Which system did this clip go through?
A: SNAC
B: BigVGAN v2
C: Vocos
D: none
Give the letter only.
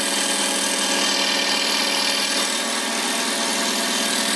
D